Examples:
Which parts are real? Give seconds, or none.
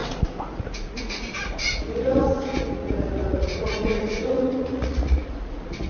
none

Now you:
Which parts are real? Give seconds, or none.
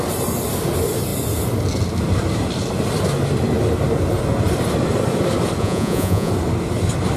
0.0-5.6; 6.3-7.2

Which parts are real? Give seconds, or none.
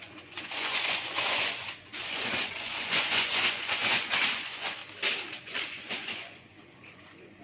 4.8-5.4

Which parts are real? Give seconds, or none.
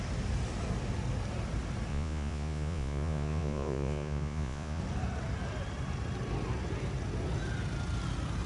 0.0-1.9; 4.8-8.5